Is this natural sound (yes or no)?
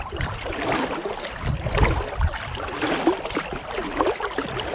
yes